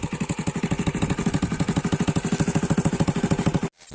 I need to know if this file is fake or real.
real